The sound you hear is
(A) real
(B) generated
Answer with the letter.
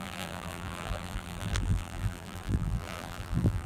B